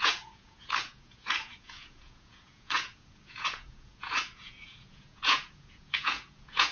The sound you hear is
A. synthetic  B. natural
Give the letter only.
A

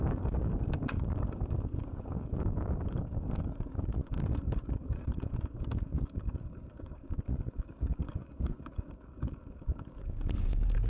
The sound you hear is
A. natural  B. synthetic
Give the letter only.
B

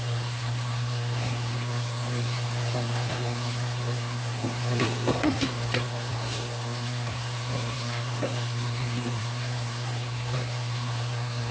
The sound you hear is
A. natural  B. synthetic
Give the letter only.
B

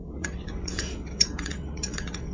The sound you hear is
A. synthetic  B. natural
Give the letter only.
A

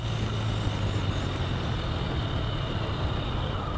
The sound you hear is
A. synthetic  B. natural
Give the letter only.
B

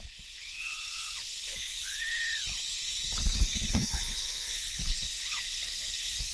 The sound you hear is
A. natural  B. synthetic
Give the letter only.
B